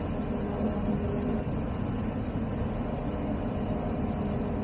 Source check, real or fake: real